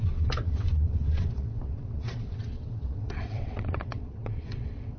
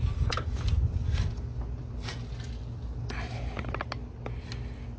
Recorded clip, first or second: second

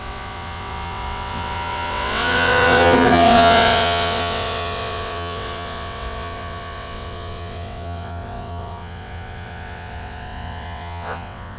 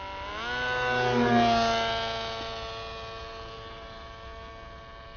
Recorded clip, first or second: second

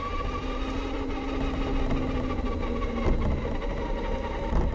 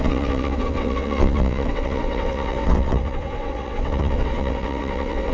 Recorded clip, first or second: first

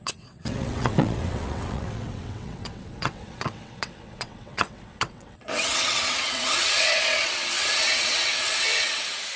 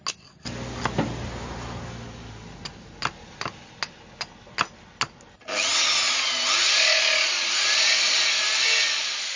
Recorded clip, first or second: second